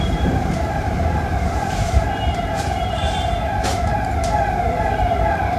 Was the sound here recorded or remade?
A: remade